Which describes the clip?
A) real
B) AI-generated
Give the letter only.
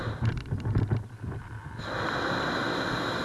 A